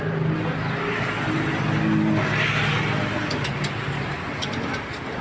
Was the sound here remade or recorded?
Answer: recorded